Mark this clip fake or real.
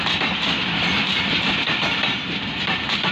real